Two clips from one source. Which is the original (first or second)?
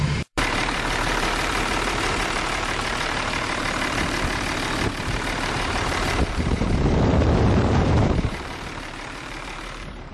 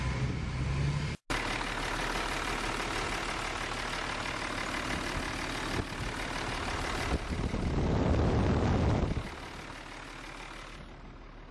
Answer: second